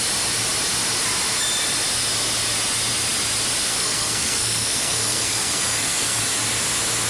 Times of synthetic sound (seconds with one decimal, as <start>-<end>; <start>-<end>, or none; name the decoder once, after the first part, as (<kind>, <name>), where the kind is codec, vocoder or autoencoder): 3.7-6.2 (codec, SNAC)